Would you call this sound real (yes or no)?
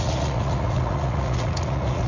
no